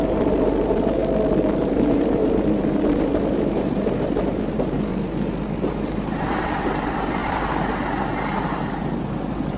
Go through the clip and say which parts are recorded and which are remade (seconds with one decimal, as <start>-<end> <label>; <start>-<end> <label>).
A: 0.0-1.0 remade; 1.0-1.6 recorded; 1.6-4.9 remade; 4.9-5.6 recorded; 5.6-9.6 remade

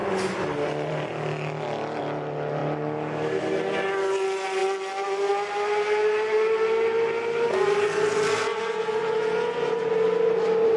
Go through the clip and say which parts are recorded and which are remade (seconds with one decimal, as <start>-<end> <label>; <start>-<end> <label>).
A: 0.0-10.8 recorded

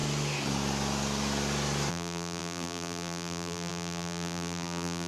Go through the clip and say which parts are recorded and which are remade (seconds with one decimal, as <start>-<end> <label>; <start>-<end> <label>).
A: 0.0-1.9 recorded; 1.9-5.1 remade

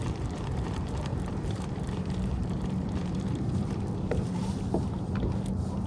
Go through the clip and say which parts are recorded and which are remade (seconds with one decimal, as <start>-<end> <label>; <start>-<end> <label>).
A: 0.0-4.4 remade; 4.4-5.9 recorded

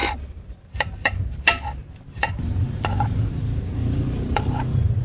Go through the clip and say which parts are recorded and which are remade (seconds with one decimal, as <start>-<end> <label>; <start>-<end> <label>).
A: 0.0-1.2 remade; 1.2-1.8 recorded; 1.8-5.0 remade

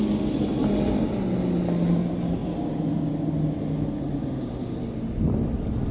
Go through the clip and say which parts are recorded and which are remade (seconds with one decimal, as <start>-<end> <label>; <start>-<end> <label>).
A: 0.0-2.4 recorded; 2.4-3.0 remade; 3.0-5.9 recorded

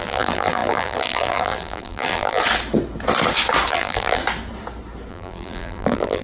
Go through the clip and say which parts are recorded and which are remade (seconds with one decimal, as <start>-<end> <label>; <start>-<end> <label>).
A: 0.0-2.4 remade; 2.4-3.7 recorded; 3.7-4.2 remade; 4.2-5.1 recorded; 5.1-6.2 remade

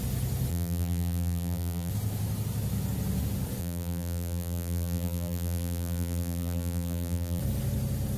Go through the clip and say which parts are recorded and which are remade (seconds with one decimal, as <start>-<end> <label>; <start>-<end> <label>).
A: 0.0-0.5 recorded; 0.5-1.9 remade; 1.9-3.6 recorded; 3.6-7.4 remade; 7.4-8.2 recorded